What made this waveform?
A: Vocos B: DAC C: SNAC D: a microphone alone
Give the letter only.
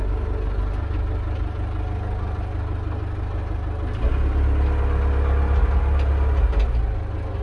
D